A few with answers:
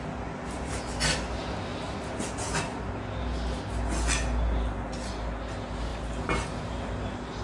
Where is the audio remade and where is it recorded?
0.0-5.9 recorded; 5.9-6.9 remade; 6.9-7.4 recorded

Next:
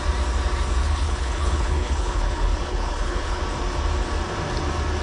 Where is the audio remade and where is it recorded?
0.0-0.8 recorded; 0.8-3.4 remade; 3.4-5.0 recorded

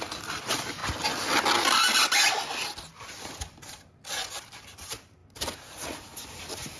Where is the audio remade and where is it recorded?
0.0-0.8 remade; 0.8-2.9 recorded; 2.9-5.2 remade; 5.2-6.8 recorded